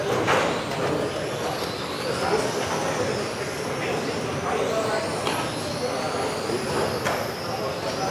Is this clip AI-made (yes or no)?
no